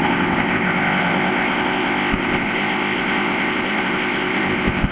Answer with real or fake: fake